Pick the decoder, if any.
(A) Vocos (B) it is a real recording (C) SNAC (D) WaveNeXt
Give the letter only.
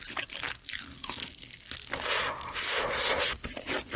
B